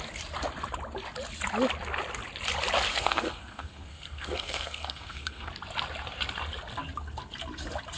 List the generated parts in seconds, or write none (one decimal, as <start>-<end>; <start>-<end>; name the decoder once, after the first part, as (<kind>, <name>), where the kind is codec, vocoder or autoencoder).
2.9-5.5 (codec, SNAC)